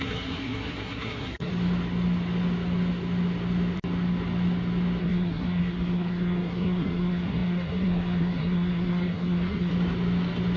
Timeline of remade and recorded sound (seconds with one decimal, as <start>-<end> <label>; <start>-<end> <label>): 0.0-1.5 remade; 1.5-5.0 recorded; 5.0-9.7 remade; 9.7-10.6 recorded